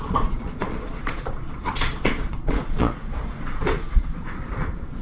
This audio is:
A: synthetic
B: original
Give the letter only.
A